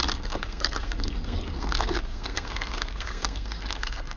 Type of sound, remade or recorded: remade